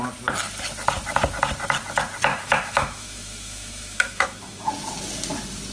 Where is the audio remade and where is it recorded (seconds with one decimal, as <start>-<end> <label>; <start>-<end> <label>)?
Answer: 0.0-2.3 recorded; 2.3-4.7 remade; 4.7-5.7 recorded